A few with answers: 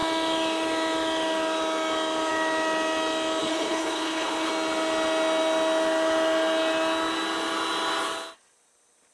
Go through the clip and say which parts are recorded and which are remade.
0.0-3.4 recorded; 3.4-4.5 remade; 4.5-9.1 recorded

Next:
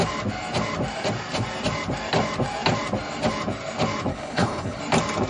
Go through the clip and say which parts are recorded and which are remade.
0.0-4.1 recorded; 4.1-4.8 remade; 4.8-5.3 recorded

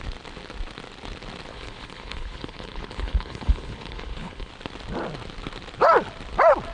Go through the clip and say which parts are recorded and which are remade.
0.0-1.5 recorded; 1.5-4.5 remade; 4.5-6.7 recorded

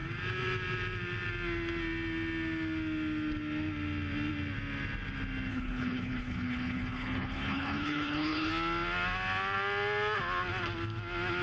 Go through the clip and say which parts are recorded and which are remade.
0.0-5.5 recorded; 5.5-8.5 remade; 8.5-11.4 recorded

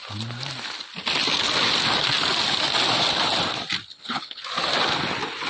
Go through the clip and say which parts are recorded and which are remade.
0.0-3.9 recorded; 3.9-4.4 remade; 4.4-5.5 recorded